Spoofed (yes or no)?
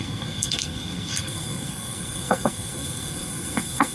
yes